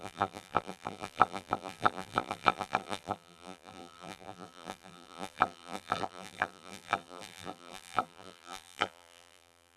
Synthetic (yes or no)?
yes